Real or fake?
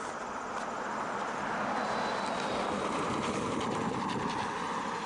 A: real